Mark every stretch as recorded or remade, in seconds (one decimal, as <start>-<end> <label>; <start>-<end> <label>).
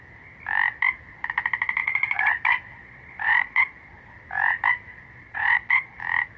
0.0-1.8 recorded; 1.8-2.3 remade; 2.3-2.8 recorded; 2.8-3.9 remade; 3.9-4.9 recorded; 4.9-6.0 remade; 6.0-6.4 recorded